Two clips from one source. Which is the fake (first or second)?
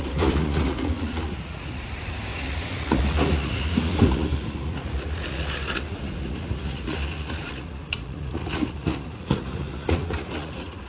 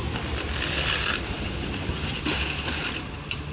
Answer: first